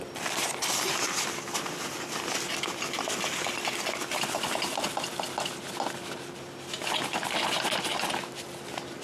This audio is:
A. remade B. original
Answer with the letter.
B